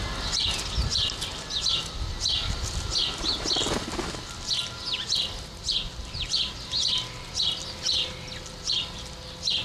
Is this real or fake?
real